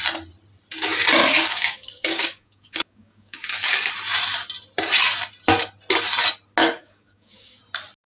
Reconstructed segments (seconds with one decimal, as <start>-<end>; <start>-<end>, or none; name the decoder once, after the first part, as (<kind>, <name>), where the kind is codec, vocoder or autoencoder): 1.2-3.9 (codec, DAC); 6.6-7.6